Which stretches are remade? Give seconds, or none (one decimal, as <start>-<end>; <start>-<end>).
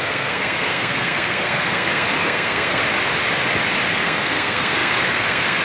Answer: 0.0-2.8; 3.9-5.6